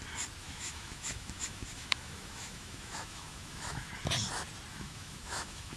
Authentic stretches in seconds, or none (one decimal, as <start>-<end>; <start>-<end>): 0.0-0.4; 3.9-4.7